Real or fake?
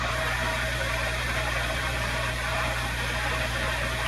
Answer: fake